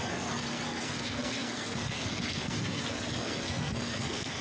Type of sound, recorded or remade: remade